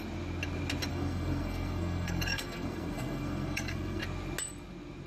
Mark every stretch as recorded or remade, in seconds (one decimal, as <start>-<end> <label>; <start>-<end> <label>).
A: 0.0-0.9 recorded; 0.9-4.0 remade; 4.0-5.1 recorded